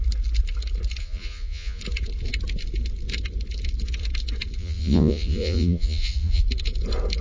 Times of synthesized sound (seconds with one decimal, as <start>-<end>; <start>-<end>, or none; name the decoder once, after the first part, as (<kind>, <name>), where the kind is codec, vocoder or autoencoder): 1.0-1.8 (vocoder, Vocos); 4.6-6.4

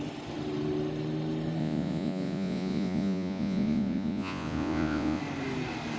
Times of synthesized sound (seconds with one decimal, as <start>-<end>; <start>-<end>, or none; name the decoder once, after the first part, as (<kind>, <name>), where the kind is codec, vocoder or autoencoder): 1.6-5.2 (vocoder, Vocos)

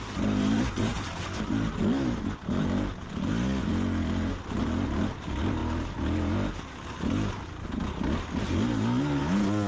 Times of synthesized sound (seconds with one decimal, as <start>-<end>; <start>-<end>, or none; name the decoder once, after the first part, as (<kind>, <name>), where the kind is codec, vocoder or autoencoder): none

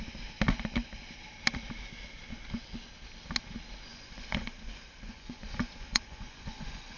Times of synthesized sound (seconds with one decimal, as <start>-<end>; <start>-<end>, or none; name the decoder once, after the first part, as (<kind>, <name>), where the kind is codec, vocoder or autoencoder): 3.9-7.0 (vocoder, Vocos)

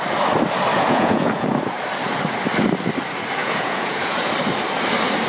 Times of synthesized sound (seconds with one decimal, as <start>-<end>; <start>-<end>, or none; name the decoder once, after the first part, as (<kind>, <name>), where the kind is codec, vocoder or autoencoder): 0.7-1.6 (vocoder, Vocos); 3.4-4.3

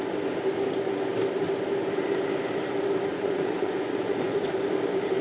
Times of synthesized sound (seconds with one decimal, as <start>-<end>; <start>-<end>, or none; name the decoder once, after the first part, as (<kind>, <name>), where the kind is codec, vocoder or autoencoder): 3.1-4.4 (vocoder, Vocos)

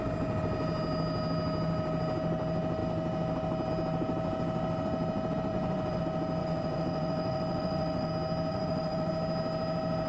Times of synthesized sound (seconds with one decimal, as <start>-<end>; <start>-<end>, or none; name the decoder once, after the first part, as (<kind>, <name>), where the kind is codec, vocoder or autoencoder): 5.5-6.0 (vocoder, Vocos); 6.4-8.1; 8.5-9.1

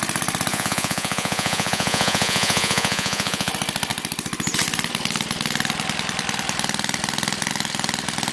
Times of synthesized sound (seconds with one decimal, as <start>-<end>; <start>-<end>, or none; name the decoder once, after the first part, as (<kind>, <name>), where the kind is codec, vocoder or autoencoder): 0.5-3.5 (vocoder, Vocos)